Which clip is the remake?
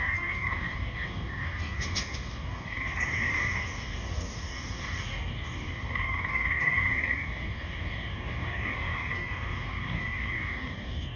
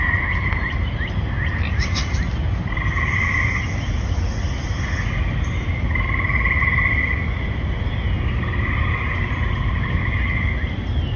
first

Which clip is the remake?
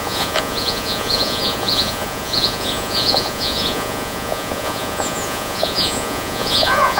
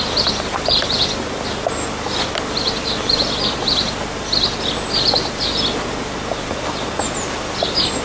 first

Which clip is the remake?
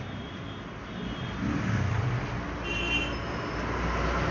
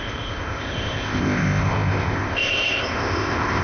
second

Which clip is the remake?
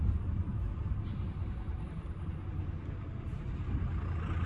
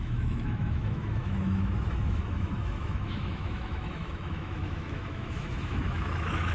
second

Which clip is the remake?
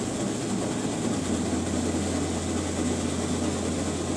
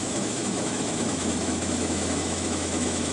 second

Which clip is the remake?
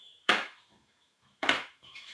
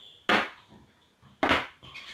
first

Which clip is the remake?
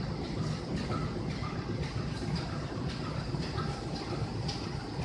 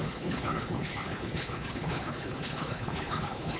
second